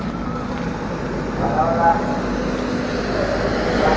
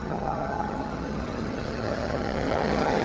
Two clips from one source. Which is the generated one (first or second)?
second